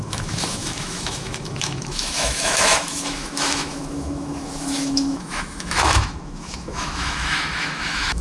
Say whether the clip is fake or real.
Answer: fake